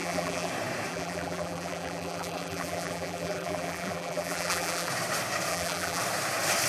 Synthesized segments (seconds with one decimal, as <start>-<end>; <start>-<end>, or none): 0.0-0.5; 0.9-4.9; 5.5-6.0